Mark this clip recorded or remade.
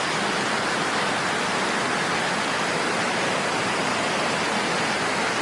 recorded